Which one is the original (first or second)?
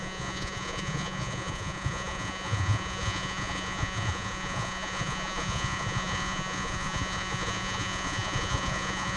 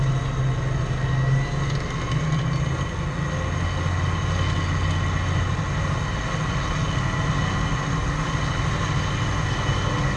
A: second